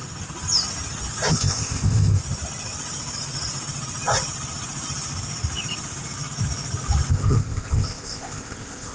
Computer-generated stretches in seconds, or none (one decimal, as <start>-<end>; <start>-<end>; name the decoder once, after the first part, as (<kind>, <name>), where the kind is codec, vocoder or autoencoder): 1.3-2.2 (codec, ZipCodec); 7.1-8.9